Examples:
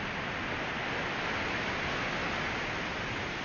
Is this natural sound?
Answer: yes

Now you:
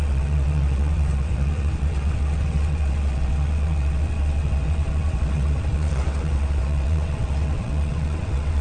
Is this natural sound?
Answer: no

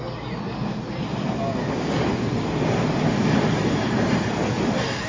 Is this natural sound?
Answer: yes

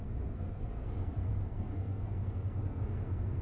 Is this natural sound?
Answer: no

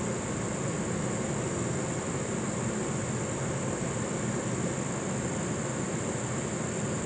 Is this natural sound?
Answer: yes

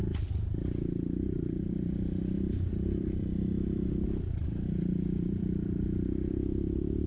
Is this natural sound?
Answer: no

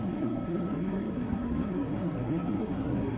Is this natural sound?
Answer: no